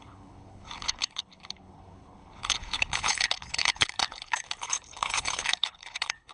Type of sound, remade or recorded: remade